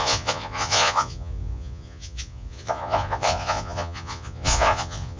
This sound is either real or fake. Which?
fake